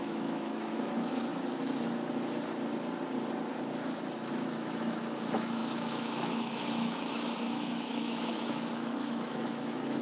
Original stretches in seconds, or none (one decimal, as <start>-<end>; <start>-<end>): 1.3-4.3

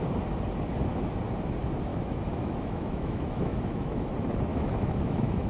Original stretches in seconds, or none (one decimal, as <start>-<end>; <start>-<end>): 0.0-1.9; 4.1-4.5

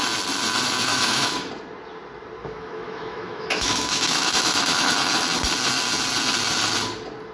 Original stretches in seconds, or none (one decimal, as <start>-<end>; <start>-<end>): 0.0-0.9; 1.5-2.4; 4.9-7.3

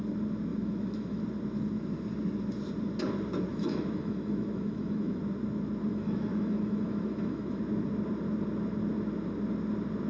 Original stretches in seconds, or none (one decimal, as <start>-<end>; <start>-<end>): 0.0-0.5; 1.2-3.5; 5.2-5.9; 7.6-10.1